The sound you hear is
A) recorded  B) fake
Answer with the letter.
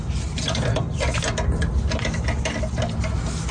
A